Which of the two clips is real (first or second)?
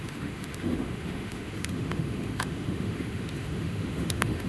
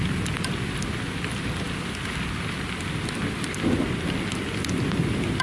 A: second